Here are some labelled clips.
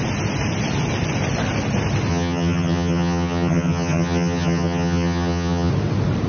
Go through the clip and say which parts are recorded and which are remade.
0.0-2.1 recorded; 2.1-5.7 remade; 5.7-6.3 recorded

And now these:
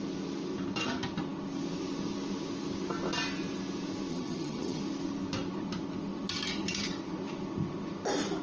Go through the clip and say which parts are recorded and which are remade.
0.0-4.1 recorded; 4.1-4.8 remade; 4.8-8.4 recorded

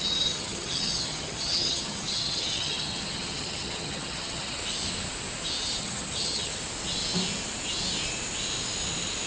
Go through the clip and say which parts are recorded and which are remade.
0.0-4.6 remade; 4.6-5.8 recorded; 5.8-6.5 remade; 6.5-9.3 recorded

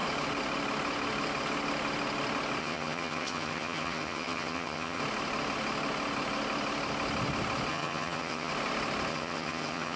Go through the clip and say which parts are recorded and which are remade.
0.0-2.6 recorded; 2.6-5.0 remade; 5.0-7.7 recorded; 7.7-8.5 remade; 8.5-9.1 recorded; 9.1-10.0 remade

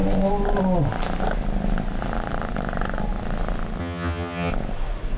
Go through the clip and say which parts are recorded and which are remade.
0.0-3.8 recorded; 3.8-4.5 remade; 4.5-5.2 recorded

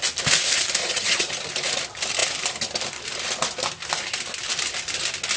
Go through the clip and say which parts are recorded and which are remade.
0.0-0.8 recorded; 0.8-1.3 remade; 1.3-5.4 recorded

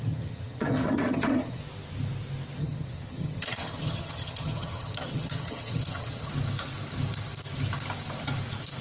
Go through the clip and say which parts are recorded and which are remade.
0.0-1.6 remade; 1.6-2.6 recorded; 2.6-6.3 remade; 6.3-8.8 recorded